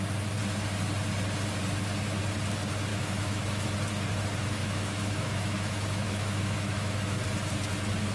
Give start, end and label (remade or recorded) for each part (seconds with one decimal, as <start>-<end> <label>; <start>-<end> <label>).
0.0-2.9 recorded; 2.9-3.7 remade; 3.7-4.6 recorded; 4.6-7.2 remade; 7.2-8.1 recorded